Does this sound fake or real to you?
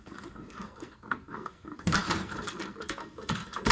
fake